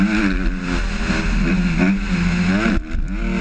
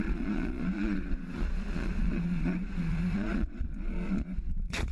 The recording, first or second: first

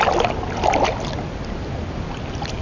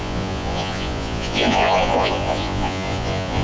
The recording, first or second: first